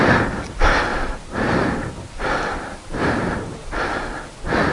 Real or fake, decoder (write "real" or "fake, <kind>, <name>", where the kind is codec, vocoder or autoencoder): real